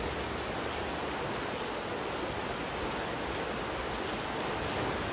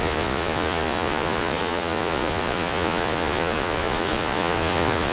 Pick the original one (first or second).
first